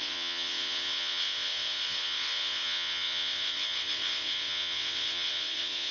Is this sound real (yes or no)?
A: no